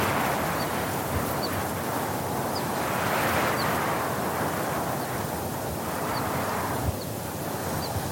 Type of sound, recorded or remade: recorded